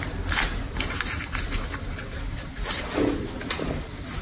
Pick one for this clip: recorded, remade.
recorded